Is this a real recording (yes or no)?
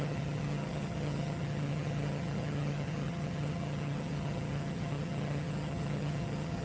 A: no